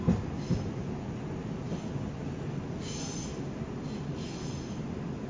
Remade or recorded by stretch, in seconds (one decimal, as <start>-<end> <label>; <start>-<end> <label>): 0.0-5.3 recorded